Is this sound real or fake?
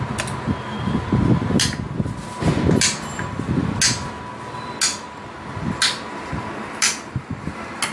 real